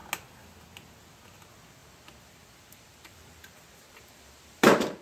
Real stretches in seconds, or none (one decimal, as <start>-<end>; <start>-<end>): 0.0-1.8